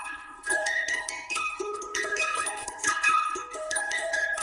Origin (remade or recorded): remade